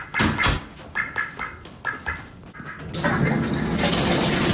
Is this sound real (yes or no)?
yes